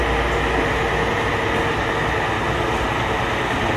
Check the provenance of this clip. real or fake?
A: real